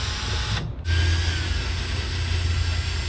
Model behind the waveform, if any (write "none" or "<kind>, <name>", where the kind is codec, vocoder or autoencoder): none